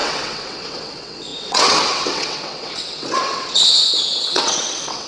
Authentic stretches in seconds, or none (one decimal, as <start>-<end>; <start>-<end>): none